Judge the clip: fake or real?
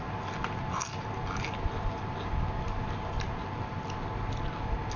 real